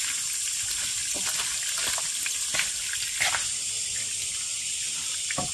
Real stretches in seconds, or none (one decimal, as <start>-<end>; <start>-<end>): 0.0-5.5